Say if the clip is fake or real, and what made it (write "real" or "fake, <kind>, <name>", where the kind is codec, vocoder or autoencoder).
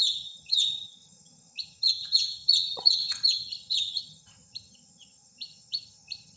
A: fake, vocoder, HiFi-GAN